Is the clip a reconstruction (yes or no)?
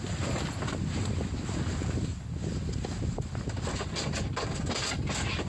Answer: no